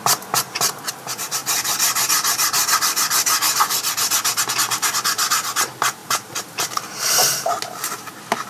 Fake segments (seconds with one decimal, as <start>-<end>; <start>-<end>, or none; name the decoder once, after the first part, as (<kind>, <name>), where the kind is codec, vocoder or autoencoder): 1.4-2.3 (vocoder, BigVGAN v2); 6.0-6.7